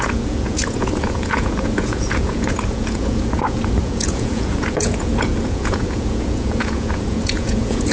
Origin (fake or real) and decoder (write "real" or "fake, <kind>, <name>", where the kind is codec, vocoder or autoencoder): fake, vocoder, Vocos